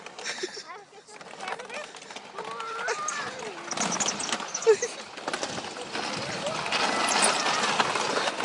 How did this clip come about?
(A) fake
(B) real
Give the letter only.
B